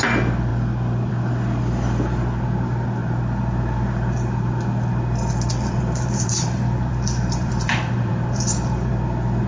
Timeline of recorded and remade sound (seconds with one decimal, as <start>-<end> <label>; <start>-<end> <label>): 0.0-5.5 recorded; 5.5-8.9 remade; 8.9-9.5 recorded